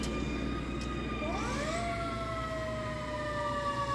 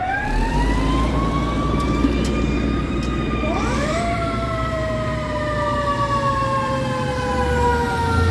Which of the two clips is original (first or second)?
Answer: first